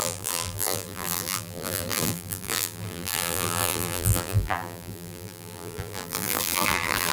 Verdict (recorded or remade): remade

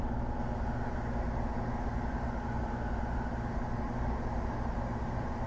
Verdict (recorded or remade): recorded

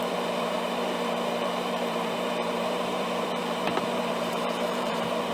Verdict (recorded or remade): remade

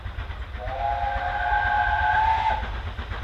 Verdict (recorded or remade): recorded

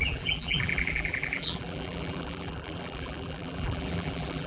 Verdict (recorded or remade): remade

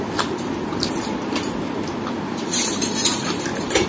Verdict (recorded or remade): remade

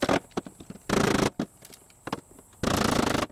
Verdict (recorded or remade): recorded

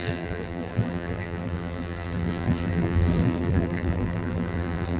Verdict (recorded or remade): remade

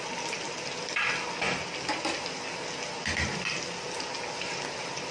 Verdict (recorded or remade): recorded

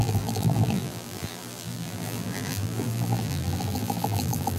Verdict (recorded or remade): remade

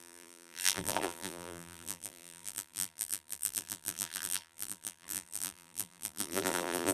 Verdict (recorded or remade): remade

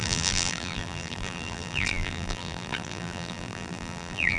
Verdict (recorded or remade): remade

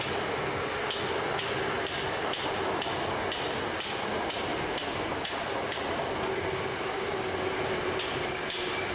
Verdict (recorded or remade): recorded